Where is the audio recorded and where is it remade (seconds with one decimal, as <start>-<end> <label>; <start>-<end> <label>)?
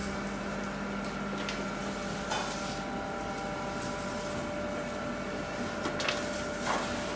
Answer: 0.0-7.2 recorded